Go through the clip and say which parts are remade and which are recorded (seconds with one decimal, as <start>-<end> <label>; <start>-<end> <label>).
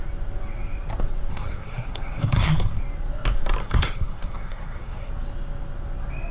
0.0-1.3 recorded; 1.3-2.8 remade; 2.8-3.6 recorded; 3.6-5.1 remade; 5.1-6.3 recorded